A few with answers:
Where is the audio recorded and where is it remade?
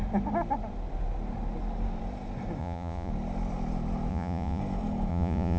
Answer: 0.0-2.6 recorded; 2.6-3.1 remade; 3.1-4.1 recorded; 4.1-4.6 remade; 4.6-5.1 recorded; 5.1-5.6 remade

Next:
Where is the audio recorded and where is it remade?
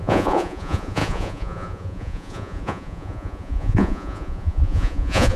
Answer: 0.0-5.4 remade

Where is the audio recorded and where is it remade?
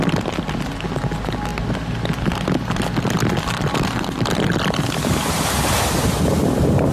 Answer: 0.0-6.9 recorded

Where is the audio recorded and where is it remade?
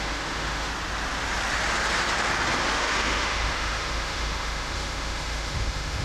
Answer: 0.0-0.7 remade; 0.7-2.7 recorded; 2.7-6.0 remade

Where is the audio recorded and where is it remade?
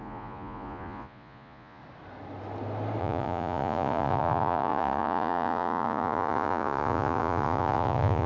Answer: 0.0-1.8 remade; 1.8-3.0 recorded; 3.0-8.3 remade